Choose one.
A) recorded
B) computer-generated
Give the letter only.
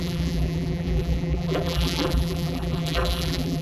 B